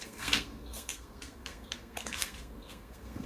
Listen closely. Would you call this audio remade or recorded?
remade